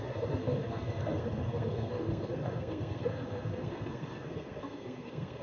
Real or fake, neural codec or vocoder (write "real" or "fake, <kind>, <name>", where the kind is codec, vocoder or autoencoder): fake, codec, SNAC